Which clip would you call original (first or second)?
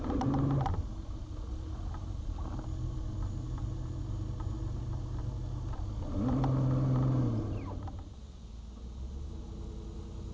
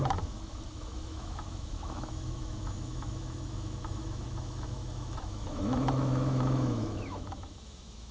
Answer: first